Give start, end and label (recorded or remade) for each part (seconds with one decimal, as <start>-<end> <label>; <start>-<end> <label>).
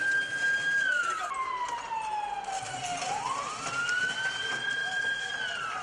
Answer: 0.0-4.8 recorded; 4.8-5.3 remade; 5.3-5.8 recorded